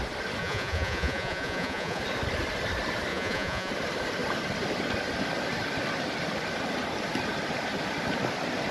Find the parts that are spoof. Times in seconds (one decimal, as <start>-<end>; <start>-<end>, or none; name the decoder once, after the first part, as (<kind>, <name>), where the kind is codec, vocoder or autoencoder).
0.4-2.0 (vocoder, Vocos); 3.1-3.7